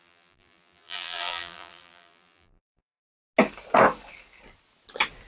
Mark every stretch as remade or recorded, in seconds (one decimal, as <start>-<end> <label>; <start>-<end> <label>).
0.0-3.0 remade; 3.0-5.3 recorded